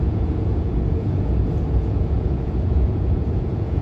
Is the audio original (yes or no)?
no